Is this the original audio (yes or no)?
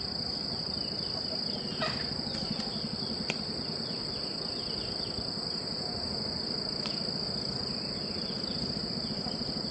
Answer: yes